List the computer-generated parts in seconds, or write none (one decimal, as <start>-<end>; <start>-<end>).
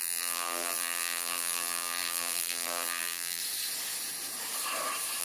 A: 0.0-3.4